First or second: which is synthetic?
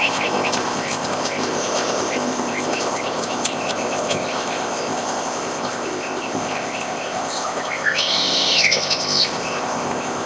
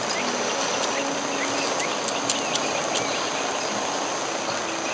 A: first